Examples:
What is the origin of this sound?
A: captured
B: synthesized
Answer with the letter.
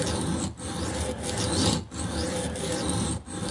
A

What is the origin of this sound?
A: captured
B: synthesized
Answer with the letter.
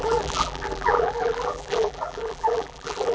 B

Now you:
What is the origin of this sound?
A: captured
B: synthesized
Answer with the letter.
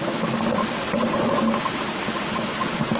A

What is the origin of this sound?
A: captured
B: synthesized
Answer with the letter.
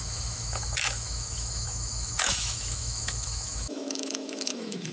B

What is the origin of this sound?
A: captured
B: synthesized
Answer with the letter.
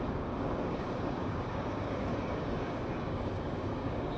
B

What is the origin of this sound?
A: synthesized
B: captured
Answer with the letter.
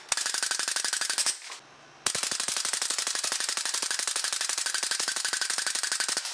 B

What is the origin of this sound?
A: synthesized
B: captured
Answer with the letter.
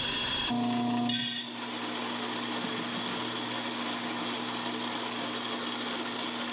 B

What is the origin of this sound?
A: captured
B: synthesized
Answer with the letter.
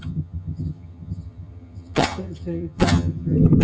B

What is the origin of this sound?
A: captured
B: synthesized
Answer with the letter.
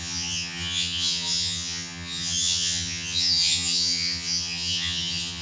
B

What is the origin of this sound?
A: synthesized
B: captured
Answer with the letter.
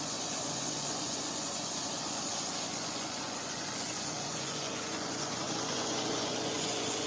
A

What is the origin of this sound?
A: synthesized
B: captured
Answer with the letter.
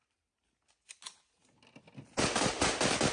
B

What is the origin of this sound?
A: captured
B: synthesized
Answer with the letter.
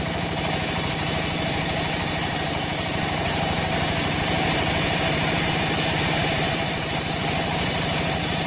B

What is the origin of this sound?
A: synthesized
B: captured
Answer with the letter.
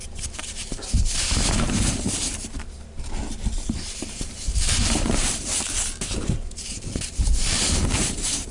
A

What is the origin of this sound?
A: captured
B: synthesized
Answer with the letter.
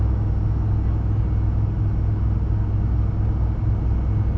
A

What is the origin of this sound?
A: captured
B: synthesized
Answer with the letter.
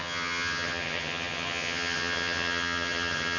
B